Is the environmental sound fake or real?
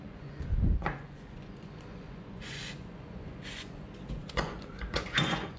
fake